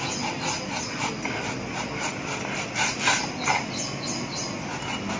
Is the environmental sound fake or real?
real